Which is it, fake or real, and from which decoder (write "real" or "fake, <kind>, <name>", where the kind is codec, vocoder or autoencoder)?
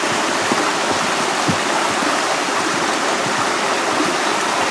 real